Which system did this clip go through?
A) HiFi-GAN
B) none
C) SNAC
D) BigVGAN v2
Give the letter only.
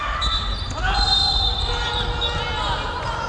B